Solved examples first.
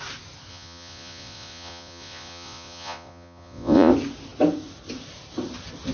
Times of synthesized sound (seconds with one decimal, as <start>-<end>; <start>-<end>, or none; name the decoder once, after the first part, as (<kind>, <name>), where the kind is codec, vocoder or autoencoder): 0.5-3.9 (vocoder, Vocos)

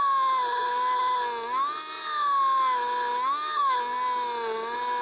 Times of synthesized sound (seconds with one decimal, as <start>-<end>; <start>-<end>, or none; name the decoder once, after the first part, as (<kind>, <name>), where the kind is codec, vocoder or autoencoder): none

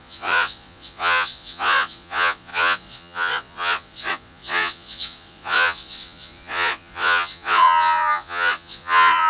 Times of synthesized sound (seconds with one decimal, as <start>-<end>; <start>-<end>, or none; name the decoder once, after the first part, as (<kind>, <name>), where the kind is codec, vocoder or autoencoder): 0.0-9.3 (vocoder, Vocos)